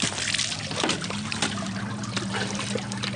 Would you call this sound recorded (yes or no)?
yes